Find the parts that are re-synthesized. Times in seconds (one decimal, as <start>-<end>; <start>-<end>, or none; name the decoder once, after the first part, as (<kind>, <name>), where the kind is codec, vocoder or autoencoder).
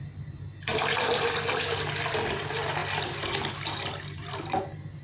none